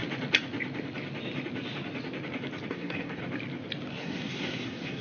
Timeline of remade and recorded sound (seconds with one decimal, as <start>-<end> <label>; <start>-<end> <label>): 0.0-2.7 recorded; 2.7-3.2 remade; 3.2-3.9 recorded; 3.9-5.0 remade

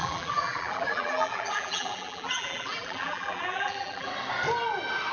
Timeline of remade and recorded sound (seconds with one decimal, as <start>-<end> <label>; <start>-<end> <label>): 0.0-4.1 remade; 4.1-5.1 recorded